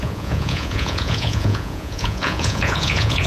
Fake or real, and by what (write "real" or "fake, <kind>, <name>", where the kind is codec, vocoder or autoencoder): fake, vocoder, Vocos